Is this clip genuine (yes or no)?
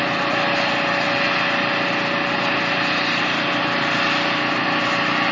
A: yes